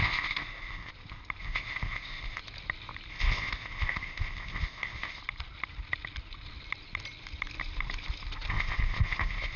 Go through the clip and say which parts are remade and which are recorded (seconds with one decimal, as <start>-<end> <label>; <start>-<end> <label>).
0.0-0.9 remade; 0.9-1.4 recorded; 1.4-2.4 remade; 2.4-3.1 recorded; 3.1-5.2 remade; 5.2-8.5 recorded; 8.5-9.6 remade